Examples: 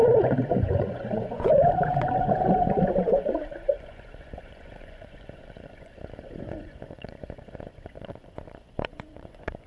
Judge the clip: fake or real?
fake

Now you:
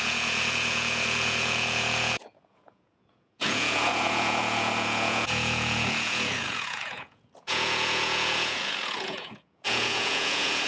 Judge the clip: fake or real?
fake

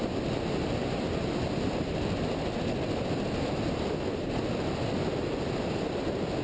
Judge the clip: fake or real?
real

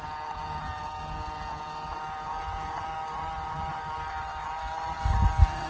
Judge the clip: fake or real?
real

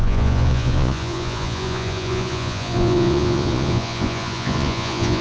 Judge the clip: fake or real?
fake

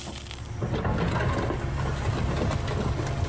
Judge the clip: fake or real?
real